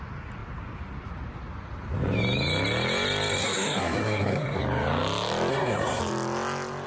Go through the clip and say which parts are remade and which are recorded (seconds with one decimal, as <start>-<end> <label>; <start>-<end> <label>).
0.0-3.4 recorded; 3.4-4.6 remade; 4.6-5.5 recorded; 5.5-6.0 remade; 6.0-6.9 recorded